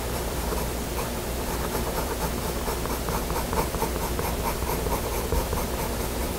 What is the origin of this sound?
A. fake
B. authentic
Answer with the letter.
A